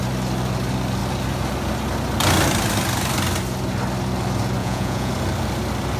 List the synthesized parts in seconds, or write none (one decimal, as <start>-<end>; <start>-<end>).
4.6-5.1

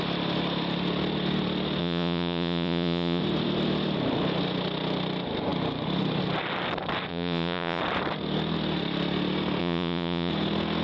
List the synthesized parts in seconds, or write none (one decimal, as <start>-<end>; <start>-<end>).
1.8-3.2; 7.1-7.8; 9.6-10.3

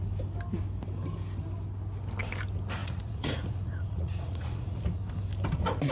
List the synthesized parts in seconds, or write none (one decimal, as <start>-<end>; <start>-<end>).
2.8-4.8